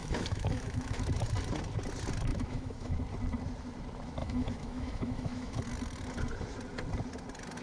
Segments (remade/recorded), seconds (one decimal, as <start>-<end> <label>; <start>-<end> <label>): 0.0-1.0 remade; 1.0-2.3 recorded; 2.3-3.0 remade; 3.0-4.2 recorded; 4.2-5.6 remade; 5.6-7.6 recorded